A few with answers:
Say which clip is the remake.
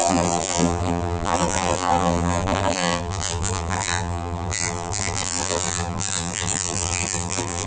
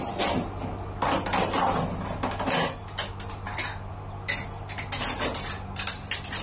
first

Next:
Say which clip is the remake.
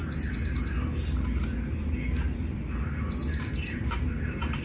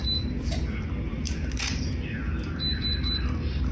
second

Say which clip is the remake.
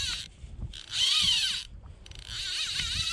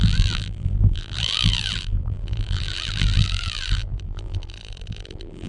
second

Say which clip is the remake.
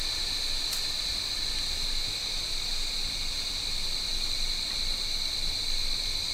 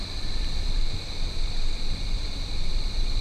second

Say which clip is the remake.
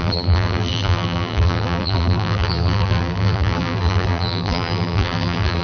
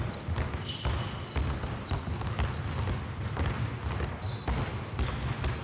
first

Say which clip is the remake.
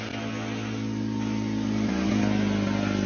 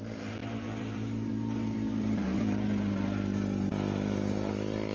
second